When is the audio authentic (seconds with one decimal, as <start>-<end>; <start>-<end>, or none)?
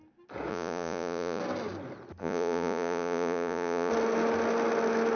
0.0-0.5; 1.4-2.2; 3.9-5.2